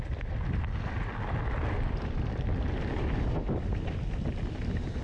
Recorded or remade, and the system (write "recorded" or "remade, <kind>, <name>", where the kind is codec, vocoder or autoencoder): recorded